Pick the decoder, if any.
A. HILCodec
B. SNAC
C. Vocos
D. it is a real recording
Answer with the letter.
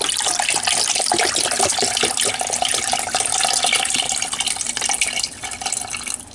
D